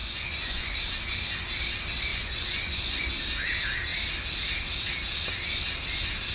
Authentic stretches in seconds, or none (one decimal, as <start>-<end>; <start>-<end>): 0.8-2.1; 3.1-6.3

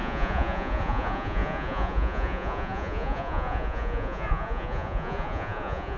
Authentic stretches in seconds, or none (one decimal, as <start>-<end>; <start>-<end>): none

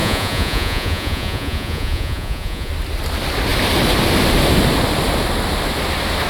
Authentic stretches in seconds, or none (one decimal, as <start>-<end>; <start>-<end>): 2.7-6.3

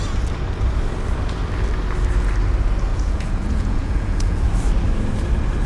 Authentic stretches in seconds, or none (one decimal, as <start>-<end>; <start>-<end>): 0.0-2.9; 4.5-5.7

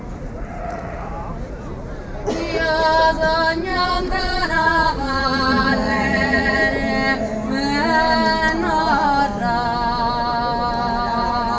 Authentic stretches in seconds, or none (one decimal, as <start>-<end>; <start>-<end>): 0.0-0.5; 1.1-3.7; 6.6-11.6